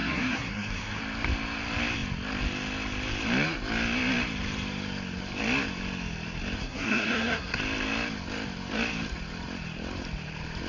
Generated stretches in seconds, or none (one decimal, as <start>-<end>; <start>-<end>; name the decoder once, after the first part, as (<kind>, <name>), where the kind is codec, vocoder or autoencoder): 0.0-1.0 (codec, SNAC); 6.6-7.6